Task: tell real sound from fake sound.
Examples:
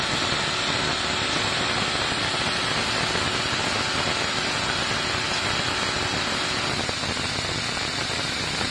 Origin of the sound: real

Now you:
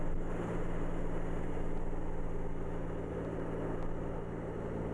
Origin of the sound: real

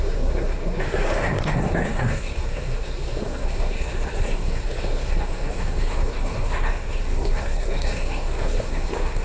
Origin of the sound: fake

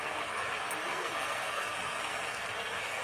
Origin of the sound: fake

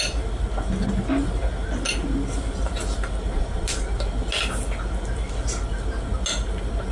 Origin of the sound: real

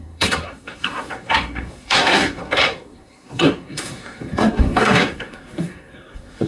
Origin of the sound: fake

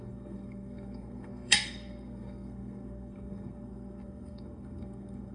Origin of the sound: fake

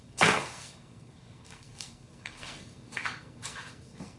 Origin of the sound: fake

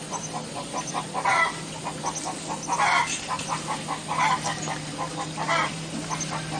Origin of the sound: real